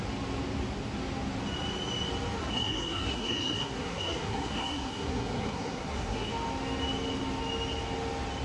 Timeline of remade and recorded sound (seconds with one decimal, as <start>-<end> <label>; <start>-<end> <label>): 0.0-2.4 recorded; 2.4-6.3 remade; 6.3-8.4 recorded